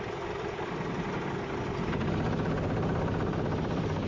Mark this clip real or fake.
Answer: real